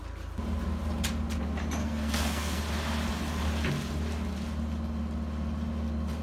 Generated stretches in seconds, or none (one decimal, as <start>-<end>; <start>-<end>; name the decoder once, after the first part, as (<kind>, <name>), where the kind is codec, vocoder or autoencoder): 1.8-2.6 (codec, SNAC)